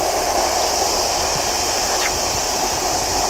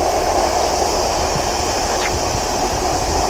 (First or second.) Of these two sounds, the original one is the second